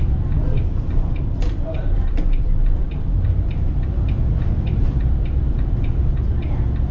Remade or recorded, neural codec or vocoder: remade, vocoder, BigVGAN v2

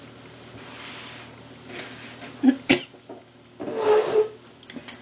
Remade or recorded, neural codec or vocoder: recorded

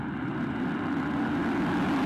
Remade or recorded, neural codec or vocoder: recorded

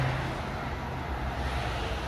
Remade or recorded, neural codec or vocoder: recorded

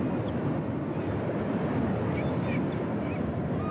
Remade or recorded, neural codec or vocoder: recorded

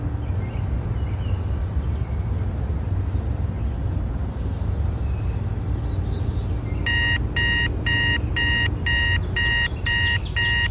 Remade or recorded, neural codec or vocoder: recorded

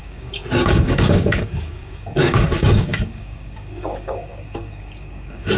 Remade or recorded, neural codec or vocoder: remade, codec, DAC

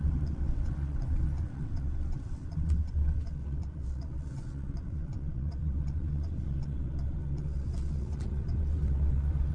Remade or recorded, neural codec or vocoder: remade, vocoder, WaveNeXt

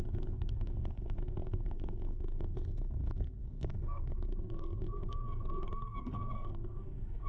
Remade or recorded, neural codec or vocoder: remade, codec, SNAC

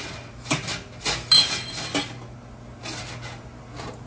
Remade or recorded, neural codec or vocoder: recorded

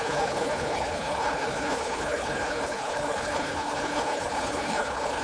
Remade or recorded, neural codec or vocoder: remade, codec, HILCodec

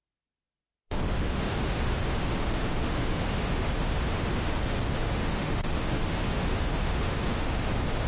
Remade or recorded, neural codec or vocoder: remade, autoencoder, DAC-VAE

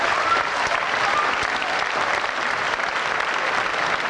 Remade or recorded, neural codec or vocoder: remade, vocoder, BigVGAN v2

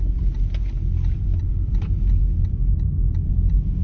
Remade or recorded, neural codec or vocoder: recorded